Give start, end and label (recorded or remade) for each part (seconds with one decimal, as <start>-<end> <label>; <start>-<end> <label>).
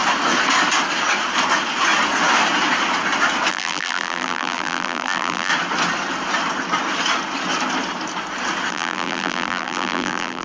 0.0-3.5 recorded; 3.5-5.5 remade; 5.5-8.7 recorded; 8.7-10.4 remade